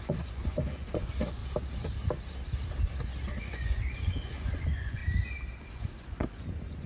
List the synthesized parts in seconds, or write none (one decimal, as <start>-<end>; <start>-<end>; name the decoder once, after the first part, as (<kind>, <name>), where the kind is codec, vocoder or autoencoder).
0.0-1.4 (vocoder, Vocos); 3.4-5.0; 5.6-6.9